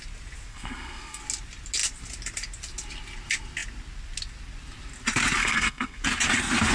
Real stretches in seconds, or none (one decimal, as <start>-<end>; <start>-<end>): 0.0-0.5; 1.2-5.4; 6.0-6.7